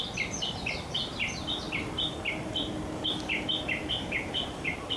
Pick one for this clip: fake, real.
fake